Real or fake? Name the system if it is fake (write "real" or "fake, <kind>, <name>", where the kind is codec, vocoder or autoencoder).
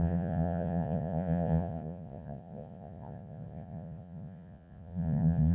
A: fake, vocoder, Vocos